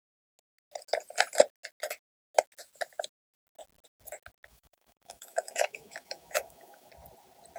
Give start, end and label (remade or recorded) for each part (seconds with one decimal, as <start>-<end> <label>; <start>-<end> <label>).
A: 0.0-4.5 recorded; 4.5-6.9 remade; 6.9-7.6 recorded